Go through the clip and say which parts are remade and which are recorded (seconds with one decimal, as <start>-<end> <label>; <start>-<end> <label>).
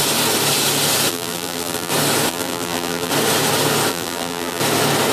0.0-1.1 recorded; 1.1-1.9 remade; 1.9-2.3 recorded; 2.3-3.1 remade; 3.1-3.9 recorded; 3.9-4.6 remade; 4.6-5.1 recorded